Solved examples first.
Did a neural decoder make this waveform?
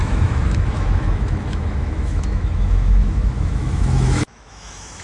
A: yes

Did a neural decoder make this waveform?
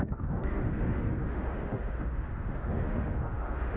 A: yes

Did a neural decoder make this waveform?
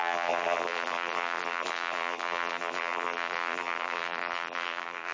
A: yes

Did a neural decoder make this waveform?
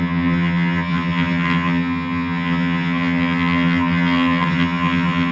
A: yes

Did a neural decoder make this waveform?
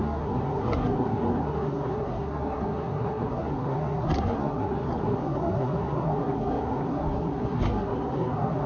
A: yes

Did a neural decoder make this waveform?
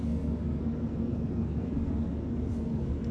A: yes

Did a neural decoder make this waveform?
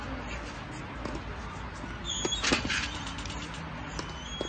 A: no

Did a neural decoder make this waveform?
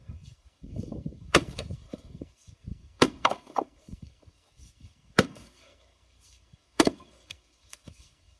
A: yes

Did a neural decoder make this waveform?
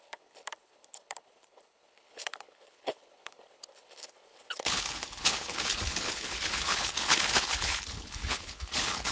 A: yes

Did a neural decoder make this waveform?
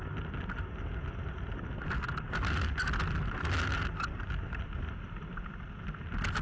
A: no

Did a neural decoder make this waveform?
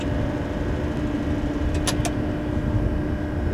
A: no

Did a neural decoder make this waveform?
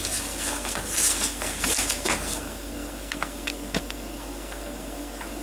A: yes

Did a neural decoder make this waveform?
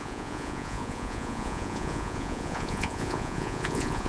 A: yes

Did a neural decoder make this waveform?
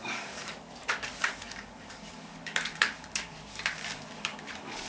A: yes